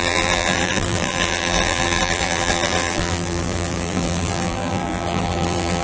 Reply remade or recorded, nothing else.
remade